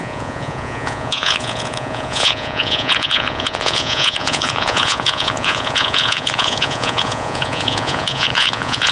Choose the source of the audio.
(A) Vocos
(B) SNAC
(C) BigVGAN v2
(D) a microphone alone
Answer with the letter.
A